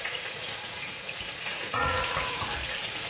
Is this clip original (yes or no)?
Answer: no